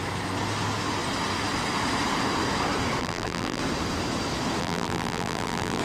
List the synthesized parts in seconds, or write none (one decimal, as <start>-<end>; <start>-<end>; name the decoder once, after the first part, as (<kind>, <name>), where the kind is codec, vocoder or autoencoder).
3.0-3.6 (vocoder, BigVGAN v2); 4.6-5.8